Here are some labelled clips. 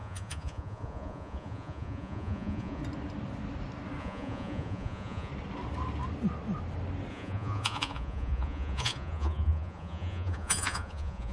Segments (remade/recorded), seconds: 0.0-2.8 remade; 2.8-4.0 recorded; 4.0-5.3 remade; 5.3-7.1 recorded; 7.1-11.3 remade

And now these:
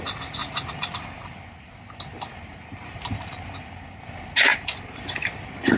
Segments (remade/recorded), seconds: 0.0-0.4 recorded; 0.4-1.7 remade; 1.7-2.3 recorded; 2.3-3.8 remade; 3.8-4.5 recorded; 4.5-5.0 remade; 5.0-5.8 recorded

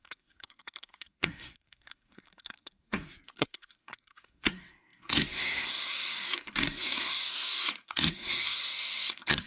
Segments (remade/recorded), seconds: 0.0-9.5 remade

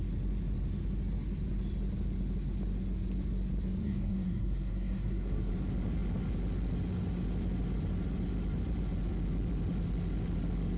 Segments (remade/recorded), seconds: 0.0-3.8 recorded; 3.8-5.5 remade; 5.5-10.8 recorded